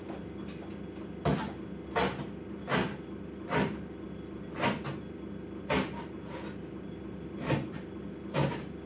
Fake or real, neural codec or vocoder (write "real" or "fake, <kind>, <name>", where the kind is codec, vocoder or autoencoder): real